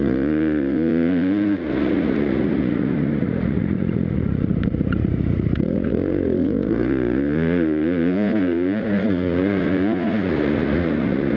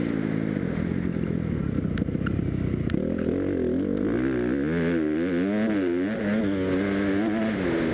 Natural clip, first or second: second